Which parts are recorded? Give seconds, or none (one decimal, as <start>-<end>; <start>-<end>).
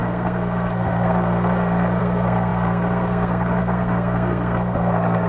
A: none